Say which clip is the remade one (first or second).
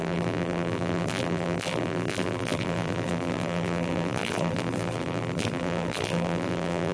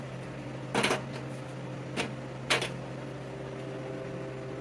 first